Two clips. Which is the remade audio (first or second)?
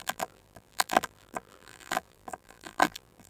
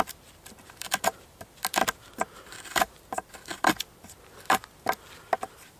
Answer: first